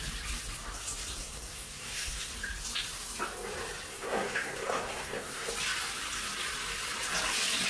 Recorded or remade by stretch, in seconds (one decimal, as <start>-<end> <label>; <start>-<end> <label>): 0.0-1.2 recorded; 1.2-2.3 remade; 2.3-3.9 recorded; 3.9-5.5 remade; 5.5-7.7 recorded